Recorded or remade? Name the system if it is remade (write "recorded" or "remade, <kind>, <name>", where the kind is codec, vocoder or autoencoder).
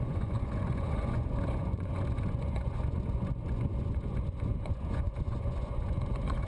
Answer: remade, vocoder, Vocos